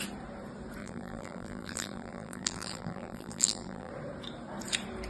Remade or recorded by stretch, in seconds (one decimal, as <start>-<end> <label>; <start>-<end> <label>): 0.0-0.8 recorded; 0.8-3.9 remade; 3.9-5.1 recorded